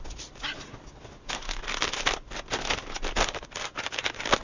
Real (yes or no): yes